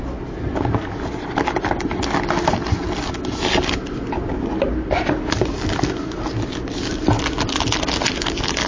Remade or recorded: recorded